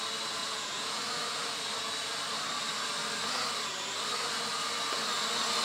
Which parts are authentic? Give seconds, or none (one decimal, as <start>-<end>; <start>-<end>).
0.0-0.4; 1.0-5.6